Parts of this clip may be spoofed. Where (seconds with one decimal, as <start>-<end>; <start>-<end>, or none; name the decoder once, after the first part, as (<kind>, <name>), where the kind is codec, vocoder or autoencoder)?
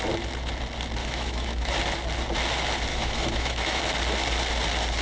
1.0-1.7 (autoencoder, DAC-VAE); 2.9-3.8